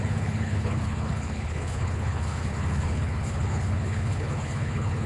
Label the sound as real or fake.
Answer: fake